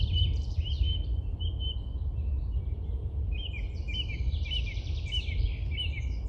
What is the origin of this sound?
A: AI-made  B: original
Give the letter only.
B